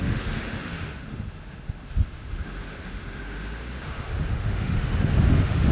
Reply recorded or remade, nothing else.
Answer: remade